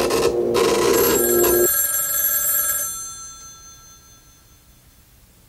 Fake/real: real